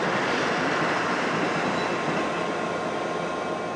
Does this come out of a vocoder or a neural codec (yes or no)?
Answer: no